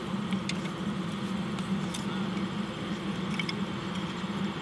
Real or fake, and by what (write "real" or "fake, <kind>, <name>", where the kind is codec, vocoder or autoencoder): real